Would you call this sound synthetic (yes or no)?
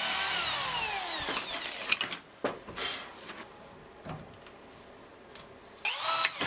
no